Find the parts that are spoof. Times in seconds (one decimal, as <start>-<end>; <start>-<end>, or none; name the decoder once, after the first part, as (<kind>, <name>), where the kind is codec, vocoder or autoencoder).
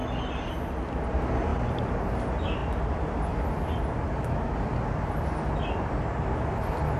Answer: none